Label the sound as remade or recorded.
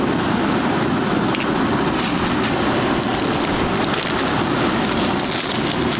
recorded